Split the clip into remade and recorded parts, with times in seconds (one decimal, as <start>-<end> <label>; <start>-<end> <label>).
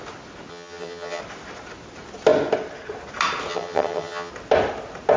0.0-0.5 recorded; 0.5-1.2 remade; 1.2-3.5 recorded; 3.5-4.3 remade; 4.3-5.2 recorded